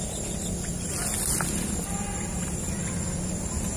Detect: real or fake real